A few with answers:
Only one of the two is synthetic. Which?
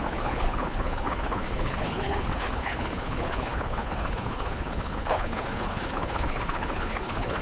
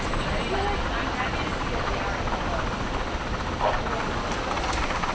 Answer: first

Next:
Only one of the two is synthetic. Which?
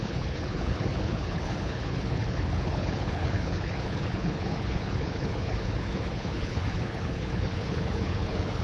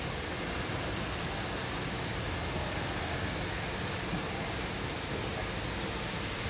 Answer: first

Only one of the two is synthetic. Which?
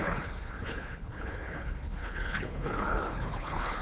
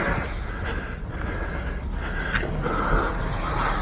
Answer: first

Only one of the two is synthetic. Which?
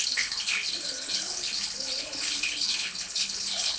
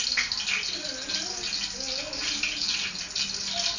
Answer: first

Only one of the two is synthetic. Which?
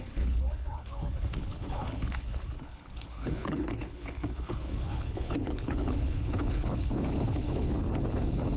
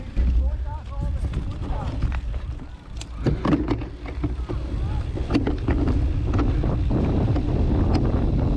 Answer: first